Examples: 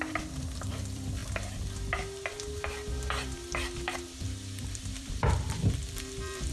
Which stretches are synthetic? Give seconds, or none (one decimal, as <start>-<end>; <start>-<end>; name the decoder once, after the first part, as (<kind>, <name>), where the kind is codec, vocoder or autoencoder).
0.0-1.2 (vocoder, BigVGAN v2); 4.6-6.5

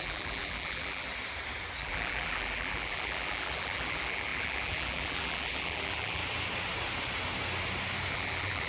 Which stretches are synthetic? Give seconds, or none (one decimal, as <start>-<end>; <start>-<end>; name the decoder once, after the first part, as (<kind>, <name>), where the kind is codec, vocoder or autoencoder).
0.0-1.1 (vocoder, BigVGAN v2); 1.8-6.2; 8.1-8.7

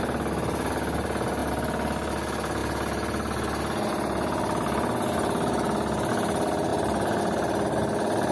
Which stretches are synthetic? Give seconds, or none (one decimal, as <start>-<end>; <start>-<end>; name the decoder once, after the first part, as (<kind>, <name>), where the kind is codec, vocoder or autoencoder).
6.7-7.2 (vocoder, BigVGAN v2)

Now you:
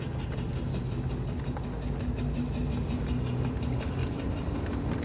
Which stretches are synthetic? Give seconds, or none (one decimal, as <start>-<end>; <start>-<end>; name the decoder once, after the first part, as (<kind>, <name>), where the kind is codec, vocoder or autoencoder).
4.0-4.6 (vocoder, BigVGAN v2)

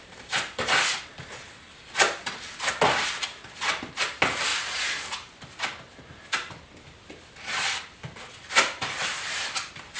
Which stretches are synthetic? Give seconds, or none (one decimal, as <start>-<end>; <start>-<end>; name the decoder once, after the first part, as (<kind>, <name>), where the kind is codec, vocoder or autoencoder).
0.0-4.5 (vocoder, BigVGAN v2); 6.1-10.0

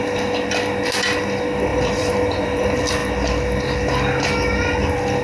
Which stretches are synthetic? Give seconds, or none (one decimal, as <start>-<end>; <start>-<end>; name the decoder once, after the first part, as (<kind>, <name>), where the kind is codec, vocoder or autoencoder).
1.7-2.6 (vocoder, BigVGAN v2)

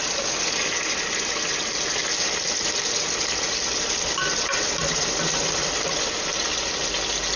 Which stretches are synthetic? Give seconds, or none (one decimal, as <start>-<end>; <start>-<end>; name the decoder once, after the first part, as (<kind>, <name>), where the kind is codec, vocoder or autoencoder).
none

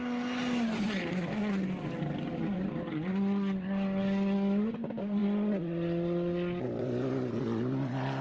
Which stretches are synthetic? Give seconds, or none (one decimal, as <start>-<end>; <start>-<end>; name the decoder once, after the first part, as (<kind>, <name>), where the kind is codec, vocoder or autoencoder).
none